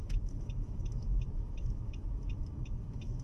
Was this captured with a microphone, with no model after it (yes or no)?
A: no